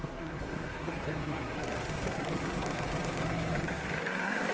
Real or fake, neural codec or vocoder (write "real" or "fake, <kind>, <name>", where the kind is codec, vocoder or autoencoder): fake, codec, SNAC